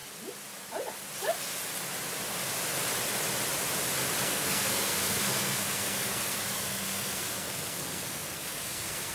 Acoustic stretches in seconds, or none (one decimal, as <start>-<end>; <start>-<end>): 0.0-4.2